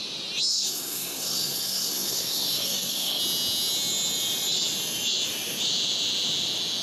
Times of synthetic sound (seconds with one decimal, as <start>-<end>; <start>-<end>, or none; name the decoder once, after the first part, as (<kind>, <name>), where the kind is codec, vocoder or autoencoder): 0.5-3.2 (codec, SNAC)